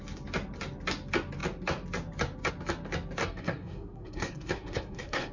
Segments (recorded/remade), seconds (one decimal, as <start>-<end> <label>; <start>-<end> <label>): 0.0-3.2 recorded; 3.2-5.3 remade